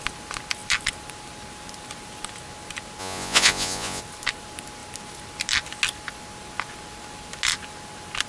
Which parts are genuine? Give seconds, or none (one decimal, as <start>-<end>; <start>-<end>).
0.0-3.0; 4.0-8.3